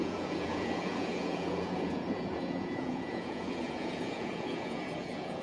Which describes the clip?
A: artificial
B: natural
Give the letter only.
A